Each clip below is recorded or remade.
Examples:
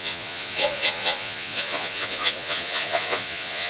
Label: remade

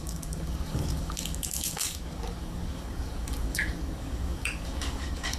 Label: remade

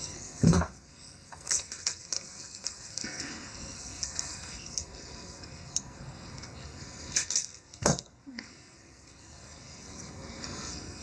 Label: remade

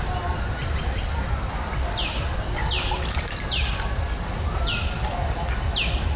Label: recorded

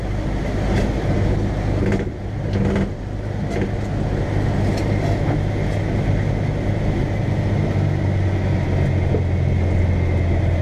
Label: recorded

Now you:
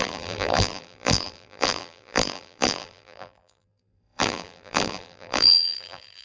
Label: remade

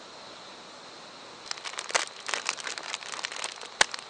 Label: recorded